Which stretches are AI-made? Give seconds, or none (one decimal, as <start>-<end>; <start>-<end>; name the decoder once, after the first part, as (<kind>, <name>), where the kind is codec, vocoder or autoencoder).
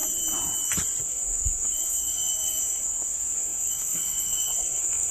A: 1.0-5.1 (codec, SNAC)